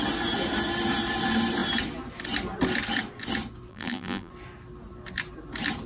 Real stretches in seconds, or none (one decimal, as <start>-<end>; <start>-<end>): 0.0-3.7; 4.3-5.9